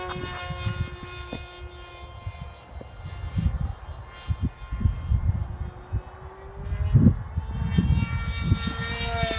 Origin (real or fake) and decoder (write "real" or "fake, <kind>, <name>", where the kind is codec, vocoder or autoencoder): real